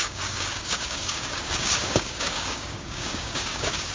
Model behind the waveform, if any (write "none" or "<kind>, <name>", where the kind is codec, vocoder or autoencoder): codec, DAC